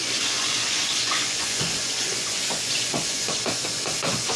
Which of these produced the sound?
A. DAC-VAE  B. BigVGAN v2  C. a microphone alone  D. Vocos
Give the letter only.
D